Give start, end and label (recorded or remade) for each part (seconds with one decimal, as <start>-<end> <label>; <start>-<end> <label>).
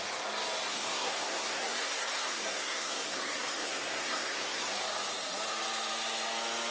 0.0-0.7 recorded; 0.7-4.7 remade; 4.7-6.7 recorded